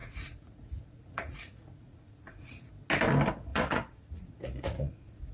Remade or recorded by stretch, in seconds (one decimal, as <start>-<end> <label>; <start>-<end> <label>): 0.0-2.7 remade; 2.7-3.5 recorded; 3.5-5.3 remade